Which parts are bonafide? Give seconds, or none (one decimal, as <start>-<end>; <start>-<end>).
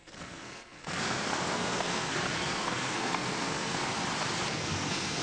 3.9-4.5